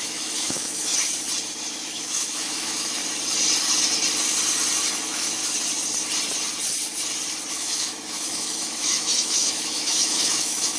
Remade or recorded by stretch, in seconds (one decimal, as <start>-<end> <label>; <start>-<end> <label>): 0.0-0.9 remade; 0.9-1.7 recorded; 1.7-3.0 remade; 3.0-4.9 recorded; 4.9-5.4 remade; 5.4-7.5 recorded; 7.5-10.8 remade